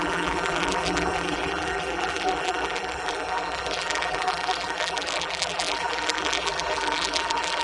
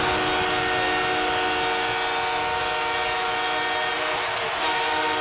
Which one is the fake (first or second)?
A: first